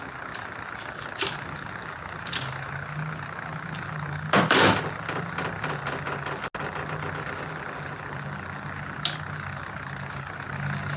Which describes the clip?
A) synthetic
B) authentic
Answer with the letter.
B